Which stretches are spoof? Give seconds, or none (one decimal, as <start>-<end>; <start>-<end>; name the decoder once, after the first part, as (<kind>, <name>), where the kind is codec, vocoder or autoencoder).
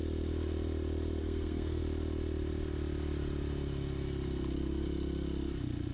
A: 1.2-1.8 (codec, SNAC)